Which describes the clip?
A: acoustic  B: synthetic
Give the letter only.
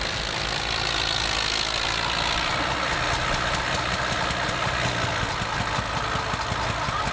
A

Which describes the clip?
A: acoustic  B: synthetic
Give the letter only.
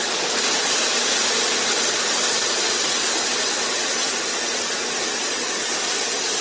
A